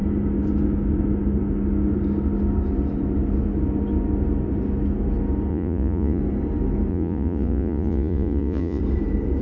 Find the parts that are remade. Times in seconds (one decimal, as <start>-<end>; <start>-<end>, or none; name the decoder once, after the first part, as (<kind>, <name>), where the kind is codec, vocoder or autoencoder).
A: 5.5-6.2 (vocoder, Vocos); 6.9-8.8